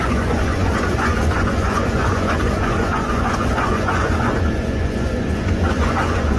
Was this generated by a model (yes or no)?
yes